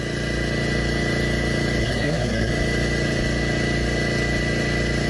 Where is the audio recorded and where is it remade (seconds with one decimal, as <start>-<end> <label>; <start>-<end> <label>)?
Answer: 0.0-1.8 recorded; 1.8-2.5 remade; 2.5-5.1 recorded